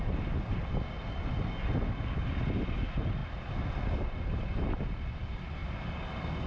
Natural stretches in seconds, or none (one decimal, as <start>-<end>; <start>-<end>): 0.0-6.5